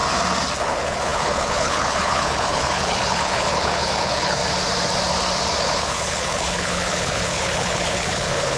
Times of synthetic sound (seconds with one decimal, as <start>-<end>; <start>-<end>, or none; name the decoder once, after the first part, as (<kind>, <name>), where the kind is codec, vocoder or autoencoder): 0.6-4.4 (codec, HILCodec); 5.6-8.6